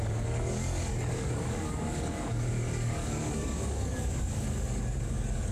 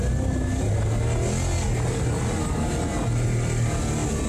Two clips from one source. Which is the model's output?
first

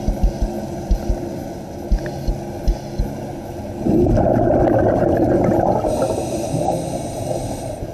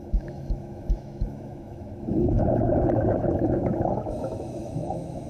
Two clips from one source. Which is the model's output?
second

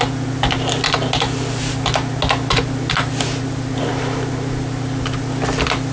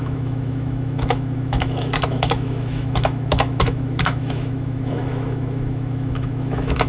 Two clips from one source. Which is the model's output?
second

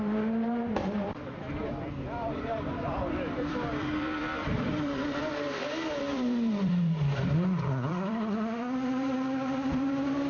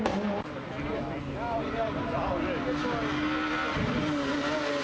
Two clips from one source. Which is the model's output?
first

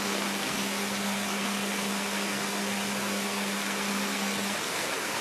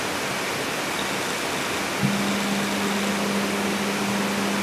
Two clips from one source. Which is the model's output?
first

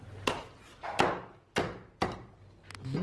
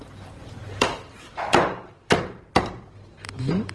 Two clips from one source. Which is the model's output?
second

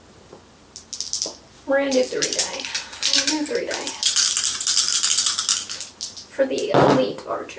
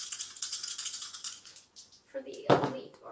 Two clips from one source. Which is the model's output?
second